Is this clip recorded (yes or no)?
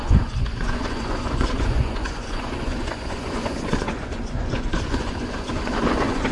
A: no